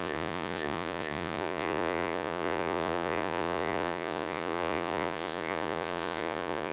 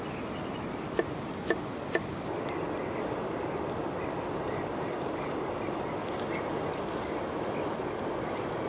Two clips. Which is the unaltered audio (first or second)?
second